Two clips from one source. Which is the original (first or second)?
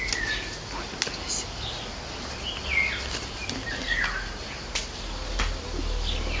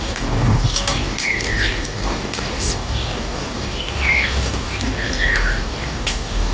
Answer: first